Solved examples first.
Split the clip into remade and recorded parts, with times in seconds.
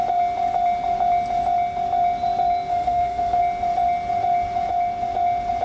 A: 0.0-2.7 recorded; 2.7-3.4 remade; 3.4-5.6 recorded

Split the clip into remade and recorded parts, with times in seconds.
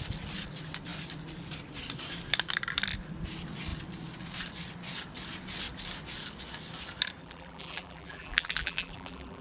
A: 0.0-7.2 recorded; 7.2-9.4 remade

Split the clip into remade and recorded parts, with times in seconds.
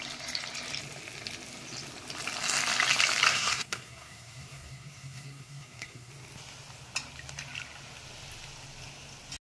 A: 0.0-3.3 recorded; 3.3-6.1 remade; 6.1-9.5 recorded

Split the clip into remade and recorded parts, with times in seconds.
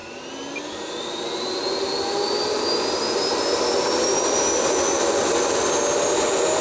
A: 0.0-6.6 recorded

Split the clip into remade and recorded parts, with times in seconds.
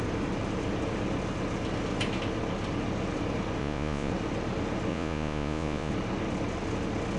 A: 0.0-3.6 recorded; 3.6-4.1 remade; 4.1-4.9 recorded; 4.9-5.9 remade; 5.9-7.2 recorded